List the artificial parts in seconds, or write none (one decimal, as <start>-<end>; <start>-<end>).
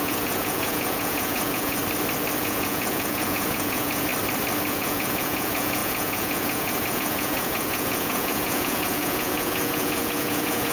0.0-1.8; 2.4-4.1; 4.7-10.7